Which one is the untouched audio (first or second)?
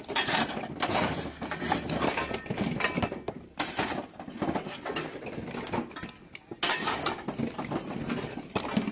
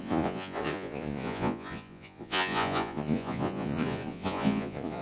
first